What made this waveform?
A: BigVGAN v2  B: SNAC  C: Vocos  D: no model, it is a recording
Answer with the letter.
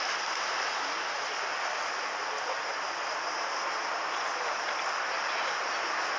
D